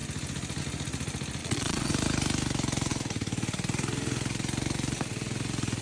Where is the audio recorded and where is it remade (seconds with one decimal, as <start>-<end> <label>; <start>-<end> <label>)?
0.0-1.4 recorded; 1.4-1.9 remade; 1.9-5.8 recorded